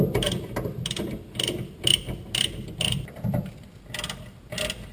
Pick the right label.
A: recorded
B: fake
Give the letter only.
A